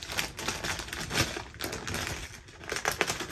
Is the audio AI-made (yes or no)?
no